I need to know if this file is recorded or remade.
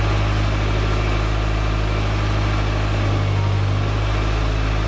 recorded